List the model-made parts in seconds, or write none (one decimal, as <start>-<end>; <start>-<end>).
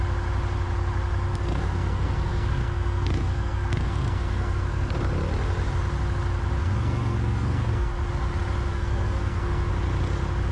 1.3-4.9; 6.6-7.9; 8.7-9.7